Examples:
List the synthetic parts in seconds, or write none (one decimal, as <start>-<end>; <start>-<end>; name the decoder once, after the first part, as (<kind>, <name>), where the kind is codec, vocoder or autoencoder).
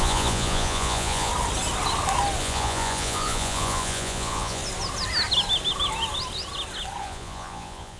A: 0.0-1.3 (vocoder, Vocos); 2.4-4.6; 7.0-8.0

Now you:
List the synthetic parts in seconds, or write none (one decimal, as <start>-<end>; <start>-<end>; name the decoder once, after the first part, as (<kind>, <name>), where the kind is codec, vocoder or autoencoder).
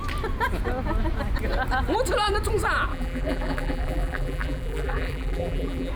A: 2.9-5.9 (vocoder, BigVGAN v2)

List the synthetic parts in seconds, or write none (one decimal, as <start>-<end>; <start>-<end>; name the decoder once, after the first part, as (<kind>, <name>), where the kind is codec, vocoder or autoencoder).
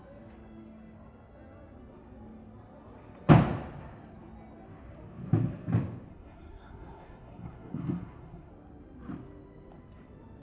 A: 6.1-8.5 (codec, SNAC)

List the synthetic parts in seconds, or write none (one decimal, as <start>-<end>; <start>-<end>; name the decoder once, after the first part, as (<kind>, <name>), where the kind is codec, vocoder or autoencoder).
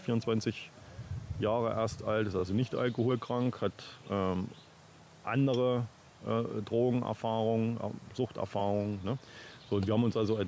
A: none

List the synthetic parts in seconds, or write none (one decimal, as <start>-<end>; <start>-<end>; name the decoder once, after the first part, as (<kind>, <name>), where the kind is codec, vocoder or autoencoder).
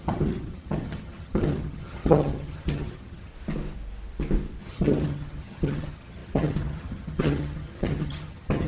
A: 0.0-3.3 (vocoder, HiFi-GAN); 4.6-8.7